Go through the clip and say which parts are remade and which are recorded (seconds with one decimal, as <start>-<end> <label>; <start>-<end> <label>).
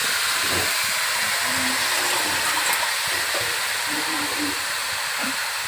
0.0-0.7 recorded; 0.7-1.8 remade; 1.8-3.4 recorded; 3.4-4.8 remade; 4.8-5.7 recorded